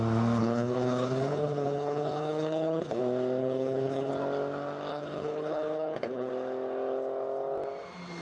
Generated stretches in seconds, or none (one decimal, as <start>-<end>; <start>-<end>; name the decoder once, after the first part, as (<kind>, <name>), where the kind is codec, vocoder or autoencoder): 0.4-3.0 (codec, HILCodec); 3.4-4.1; 4.9-6.3